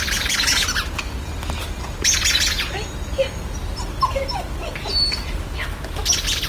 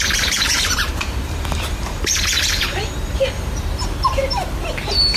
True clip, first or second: first